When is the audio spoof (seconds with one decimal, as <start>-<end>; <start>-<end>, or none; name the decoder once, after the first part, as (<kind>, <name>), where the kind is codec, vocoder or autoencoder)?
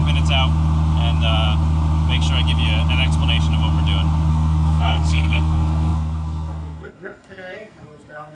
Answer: 4.3-8.3 (codec, SNAC)